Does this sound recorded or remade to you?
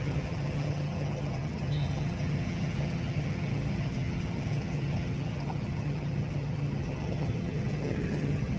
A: remade